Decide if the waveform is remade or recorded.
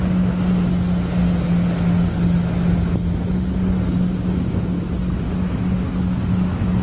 recorded